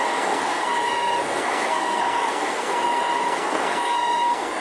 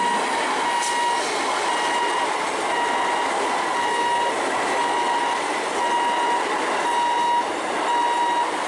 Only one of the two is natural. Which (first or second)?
second